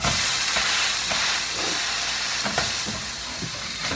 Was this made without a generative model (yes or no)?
yes